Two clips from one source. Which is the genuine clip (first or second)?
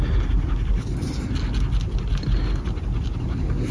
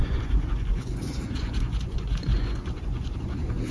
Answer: first